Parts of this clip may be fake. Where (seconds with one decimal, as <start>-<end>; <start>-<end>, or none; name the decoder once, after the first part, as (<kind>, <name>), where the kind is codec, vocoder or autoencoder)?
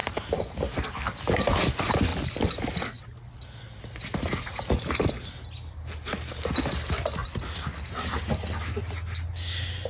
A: none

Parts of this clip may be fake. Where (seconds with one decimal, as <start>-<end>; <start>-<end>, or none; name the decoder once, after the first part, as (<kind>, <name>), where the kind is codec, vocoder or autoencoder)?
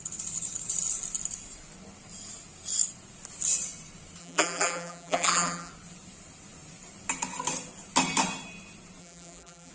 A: 4.2-5.7 (vocoder, BigVGAN v2); 9.0-9.7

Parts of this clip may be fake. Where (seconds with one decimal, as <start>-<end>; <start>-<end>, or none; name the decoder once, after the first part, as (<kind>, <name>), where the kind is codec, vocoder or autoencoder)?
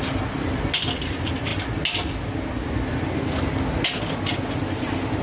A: none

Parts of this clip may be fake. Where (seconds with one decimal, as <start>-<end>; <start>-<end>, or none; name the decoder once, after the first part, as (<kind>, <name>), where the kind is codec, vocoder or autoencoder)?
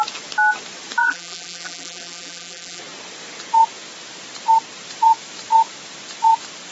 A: 1.0-2.8 (vocoder, BigVGAN v2)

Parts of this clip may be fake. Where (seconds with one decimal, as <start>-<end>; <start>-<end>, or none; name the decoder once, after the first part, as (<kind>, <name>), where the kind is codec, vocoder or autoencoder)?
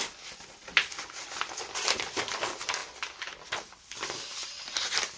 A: 4.4-5.2 (vocoder, BigVGAN v2)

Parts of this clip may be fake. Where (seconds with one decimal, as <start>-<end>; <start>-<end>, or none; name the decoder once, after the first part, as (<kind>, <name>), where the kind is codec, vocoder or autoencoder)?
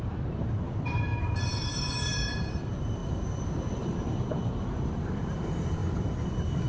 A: 0.0-1.1 (vocoder, BigVGAN v2); 1.7-3.0; 3.7-5.8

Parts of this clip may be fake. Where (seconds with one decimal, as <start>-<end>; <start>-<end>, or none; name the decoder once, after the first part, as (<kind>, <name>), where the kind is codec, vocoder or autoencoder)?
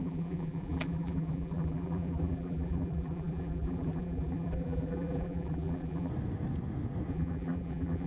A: 0.0-6.1 (vocoder, BigVGAN v2); 7.1-8.1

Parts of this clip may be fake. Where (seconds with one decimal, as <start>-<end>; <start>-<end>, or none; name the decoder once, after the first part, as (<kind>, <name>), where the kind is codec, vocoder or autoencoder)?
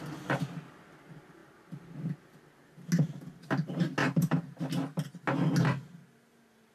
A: 4.0-4.6 (vocoder, BigVGAN v2)